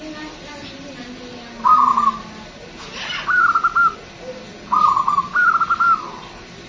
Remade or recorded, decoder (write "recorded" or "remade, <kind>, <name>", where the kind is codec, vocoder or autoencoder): recorded